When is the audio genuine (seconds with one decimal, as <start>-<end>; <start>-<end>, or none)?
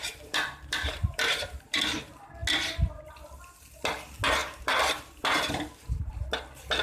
1.8-4.4; 6.1-6.8